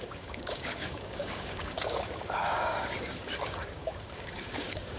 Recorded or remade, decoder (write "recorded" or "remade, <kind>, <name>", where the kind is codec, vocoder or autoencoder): remade, codec, DAC